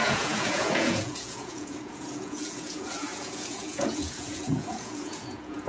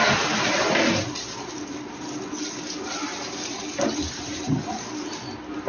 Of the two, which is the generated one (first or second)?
first